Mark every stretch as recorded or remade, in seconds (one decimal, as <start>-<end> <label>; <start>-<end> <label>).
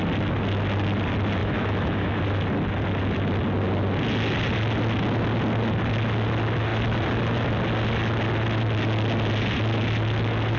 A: 0.0-1.4 recorded; 1.4-2.2 remade; 2.2-10.6 recorded